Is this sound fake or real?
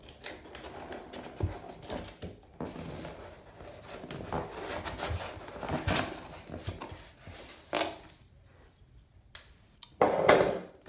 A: real